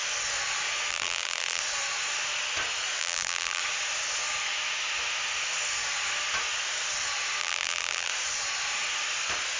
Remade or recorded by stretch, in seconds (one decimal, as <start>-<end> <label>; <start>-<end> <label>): 0.0-0.9 recorded; 0.9-1.6 remade; 1.6-3.0 recorded; 3.0-3.6 remade; 3.6-7.4 recorded; 7.4-8.1 remade; 8.1-9.6 recorded